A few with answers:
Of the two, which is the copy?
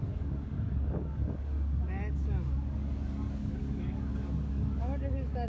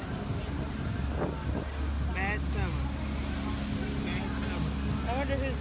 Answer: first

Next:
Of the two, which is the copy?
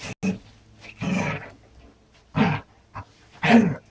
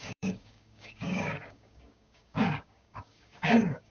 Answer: second